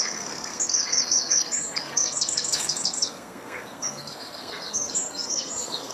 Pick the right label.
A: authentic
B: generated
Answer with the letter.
B